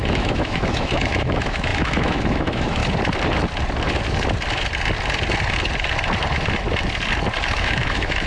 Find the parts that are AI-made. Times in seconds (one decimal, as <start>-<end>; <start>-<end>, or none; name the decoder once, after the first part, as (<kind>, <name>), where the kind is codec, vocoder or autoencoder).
0.0-2.8 (autoencoder, DAC-VAE); 7.6-8.3